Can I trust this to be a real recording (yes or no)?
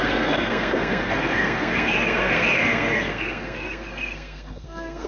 no